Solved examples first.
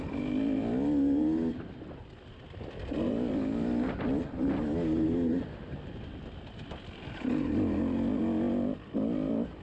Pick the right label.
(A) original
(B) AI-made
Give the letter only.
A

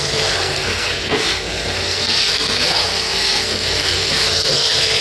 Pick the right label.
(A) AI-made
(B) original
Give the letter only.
A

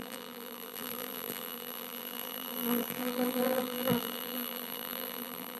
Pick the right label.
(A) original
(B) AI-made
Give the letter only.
B